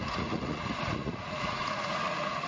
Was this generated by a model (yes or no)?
yes